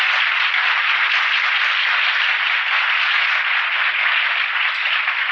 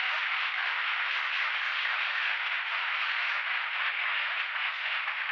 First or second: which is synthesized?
second